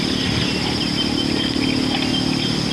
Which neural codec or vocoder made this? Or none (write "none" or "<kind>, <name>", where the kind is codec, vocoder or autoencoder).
none